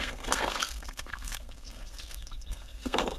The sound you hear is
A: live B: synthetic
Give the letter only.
B